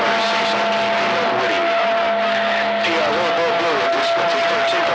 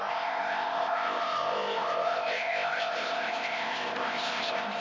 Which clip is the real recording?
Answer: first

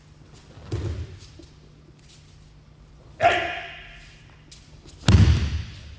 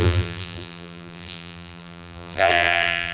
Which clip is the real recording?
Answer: first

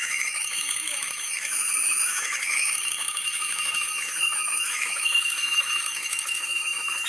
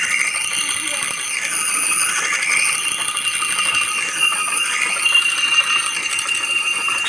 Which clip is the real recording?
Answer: second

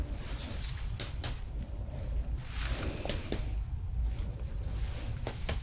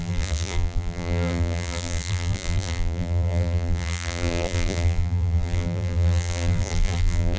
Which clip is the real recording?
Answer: first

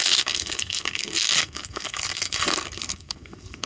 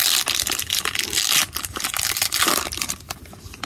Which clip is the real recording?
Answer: second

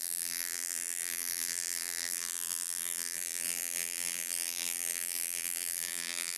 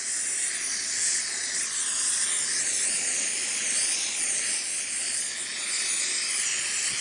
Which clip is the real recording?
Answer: second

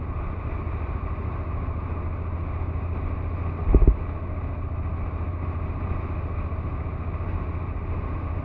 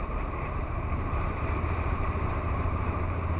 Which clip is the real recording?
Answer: first